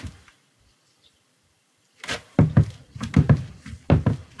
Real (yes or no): yes